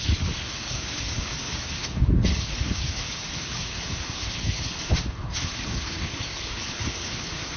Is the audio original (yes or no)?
no